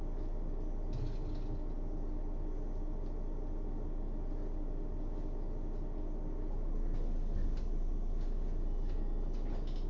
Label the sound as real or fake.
real